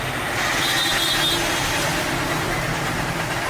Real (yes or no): yes